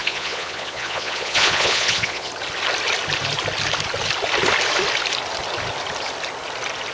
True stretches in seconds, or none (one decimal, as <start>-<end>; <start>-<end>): 2.3-6.9